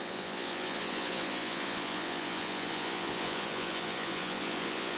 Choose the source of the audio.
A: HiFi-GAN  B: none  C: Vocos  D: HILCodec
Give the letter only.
C